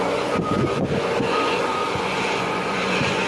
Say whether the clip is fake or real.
fake